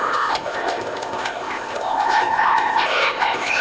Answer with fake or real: fake